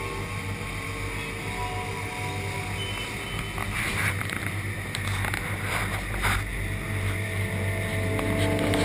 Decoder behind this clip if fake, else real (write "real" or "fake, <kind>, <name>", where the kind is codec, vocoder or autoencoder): real